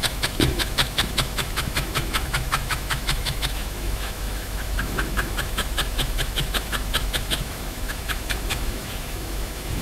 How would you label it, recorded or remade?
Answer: remade